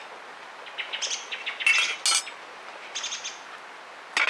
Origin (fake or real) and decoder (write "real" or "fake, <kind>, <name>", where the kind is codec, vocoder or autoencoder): real